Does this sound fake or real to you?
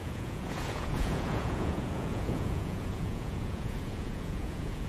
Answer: fake